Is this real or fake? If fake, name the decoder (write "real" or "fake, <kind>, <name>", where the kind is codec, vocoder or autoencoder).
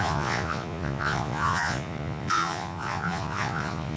fake, vocoder, Vocos